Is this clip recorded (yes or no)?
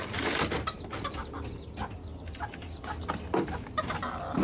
yes